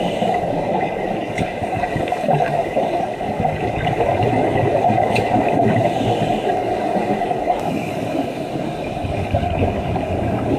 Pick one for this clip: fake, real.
fake